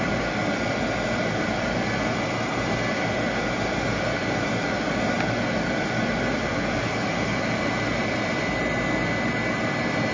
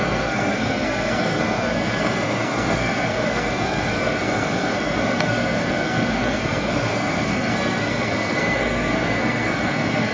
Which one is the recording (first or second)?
first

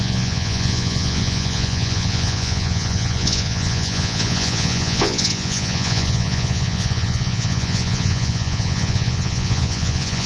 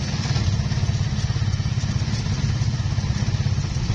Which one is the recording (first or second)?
second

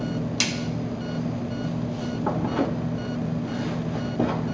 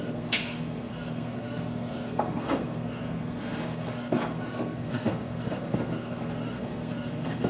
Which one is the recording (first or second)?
first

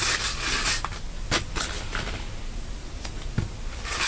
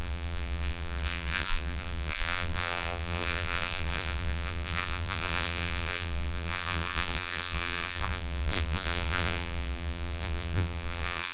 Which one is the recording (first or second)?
first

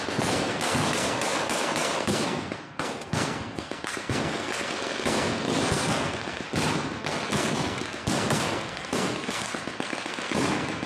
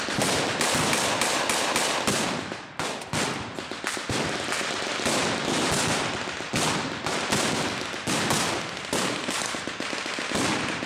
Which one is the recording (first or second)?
second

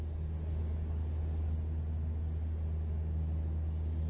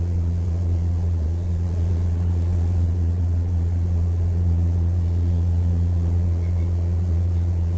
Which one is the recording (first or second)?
first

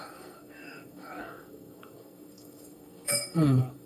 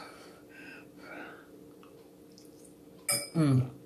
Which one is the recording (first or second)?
second